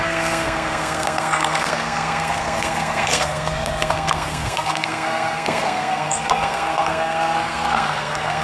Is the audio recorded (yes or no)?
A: no